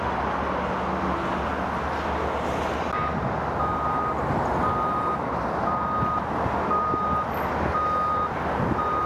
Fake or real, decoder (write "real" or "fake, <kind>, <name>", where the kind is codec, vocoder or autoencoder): real